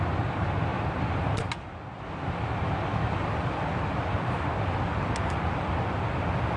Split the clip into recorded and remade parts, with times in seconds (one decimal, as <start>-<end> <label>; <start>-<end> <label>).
0.0-6.6 recorded

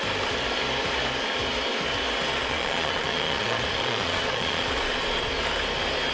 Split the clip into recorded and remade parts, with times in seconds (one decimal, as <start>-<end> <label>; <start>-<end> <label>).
0.0-2.4 recorded; 2.4-5.3 remade; 5.3-6.1 recorded

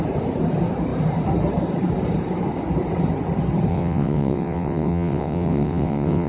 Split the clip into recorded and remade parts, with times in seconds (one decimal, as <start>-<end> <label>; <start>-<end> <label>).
0.0-3.7 recorded; 3.7-6.3 remade

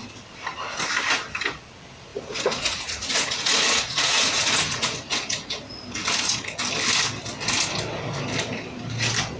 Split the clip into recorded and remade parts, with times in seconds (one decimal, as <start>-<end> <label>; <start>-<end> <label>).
0.0-2.1 recorded; 2.1-5.7 remade; 5.7-9.4 recorded

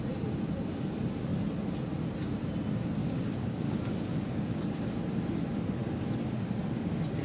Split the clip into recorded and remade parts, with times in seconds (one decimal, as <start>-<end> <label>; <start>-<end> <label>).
0.0-3.0 recorded; 3.0-4.6 remade; 4.6-7.2 recorded